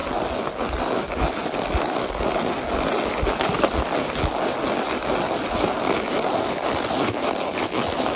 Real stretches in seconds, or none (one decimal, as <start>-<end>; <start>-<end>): 0.0-8.2